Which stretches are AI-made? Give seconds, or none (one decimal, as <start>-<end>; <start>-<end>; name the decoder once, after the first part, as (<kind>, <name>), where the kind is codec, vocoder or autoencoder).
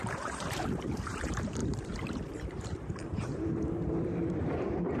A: 0.0-5.0 (vocoder, BigVGAN v2)